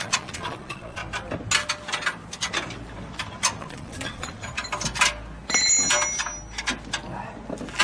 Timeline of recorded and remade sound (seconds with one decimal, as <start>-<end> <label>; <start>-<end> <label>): 0.0-1.0 remade; 1.0-3.6 recorded; 3.6-4.6 remade; 4.6-7.8 recorded